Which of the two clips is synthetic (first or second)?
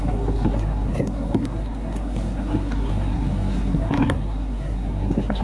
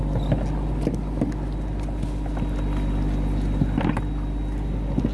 first